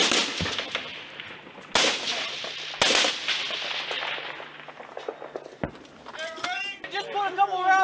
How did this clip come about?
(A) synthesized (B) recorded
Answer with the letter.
B